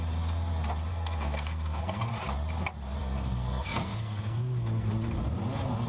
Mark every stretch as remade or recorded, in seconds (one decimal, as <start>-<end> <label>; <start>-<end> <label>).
0.0-0.9 recorded; 0.9-2.1 remade; 2.1-3.0 recorded; 3.0-4.9 remade; 4.9-5.9 recorded